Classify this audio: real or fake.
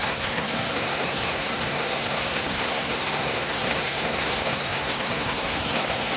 fake